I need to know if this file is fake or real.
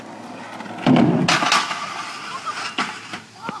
real